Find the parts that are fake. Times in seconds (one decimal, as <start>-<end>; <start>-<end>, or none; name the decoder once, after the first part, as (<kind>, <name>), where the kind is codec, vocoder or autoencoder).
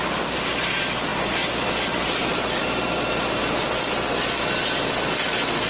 none